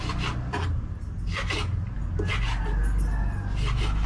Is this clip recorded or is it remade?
recorded